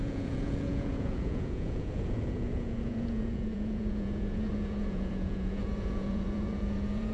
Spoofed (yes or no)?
yes